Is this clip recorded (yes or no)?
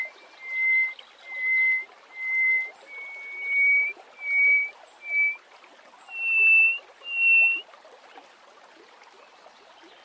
yes